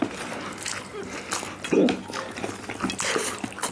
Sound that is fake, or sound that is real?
real